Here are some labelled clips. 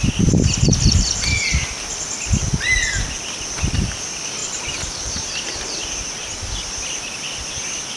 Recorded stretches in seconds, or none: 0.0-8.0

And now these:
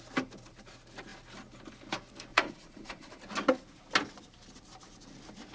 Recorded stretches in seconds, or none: 0.0-2.3; 3.1-5.5

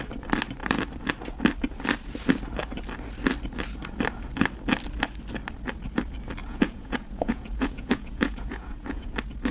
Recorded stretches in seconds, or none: 0.0-6.4; 9.1-9.5

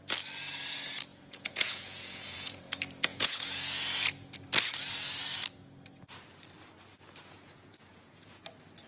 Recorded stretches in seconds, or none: 0.0-1.1; 2.6-3.1; 4.3-6.9; 8.4-8.9

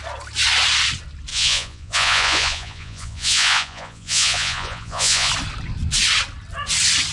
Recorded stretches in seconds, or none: 0.0-1.3; 5.3-7.1